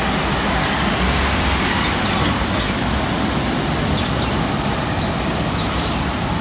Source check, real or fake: real